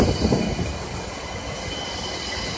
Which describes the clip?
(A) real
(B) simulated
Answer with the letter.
A